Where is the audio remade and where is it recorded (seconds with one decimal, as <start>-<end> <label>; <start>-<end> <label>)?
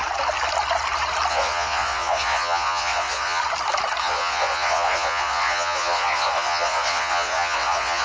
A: 0.0-1.3 recorded; 1.3-3.4 remade; 3.4-4.0 recorded; 4.0-8.0 remade